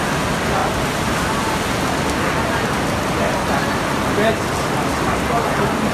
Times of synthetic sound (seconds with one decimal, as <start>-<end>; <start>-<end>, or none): none